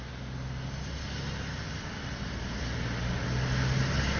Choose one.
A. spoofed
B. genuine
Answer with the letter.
B